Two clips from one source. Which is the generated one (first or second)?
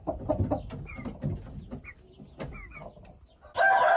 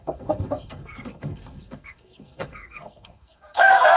second